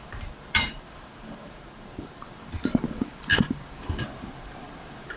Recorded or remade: remade